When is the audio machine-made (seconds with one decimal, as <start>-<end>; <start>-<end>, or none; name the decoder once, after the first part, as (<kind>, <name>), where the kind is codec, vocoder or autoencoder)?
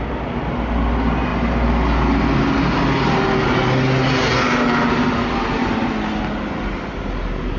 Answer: none